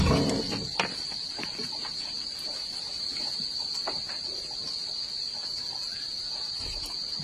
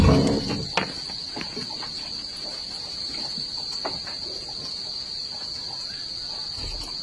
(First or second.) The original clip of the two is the second